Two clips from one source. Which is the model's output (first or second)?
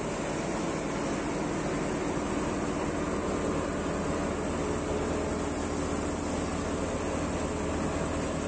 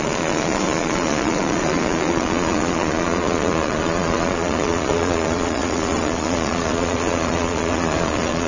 second